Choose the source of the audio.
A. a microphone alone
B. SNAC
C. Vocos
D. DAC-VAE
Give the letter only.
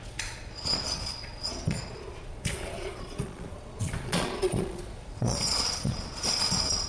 C